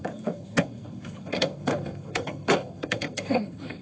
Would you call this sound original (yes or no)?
no